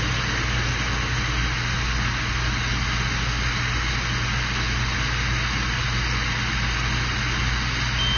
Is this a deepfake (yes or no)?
no